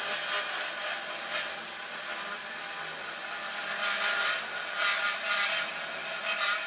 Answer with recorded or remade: recorded